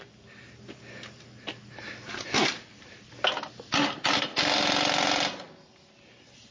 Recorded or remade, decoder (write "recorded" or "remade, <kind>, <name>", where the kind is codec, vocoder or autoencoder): recorded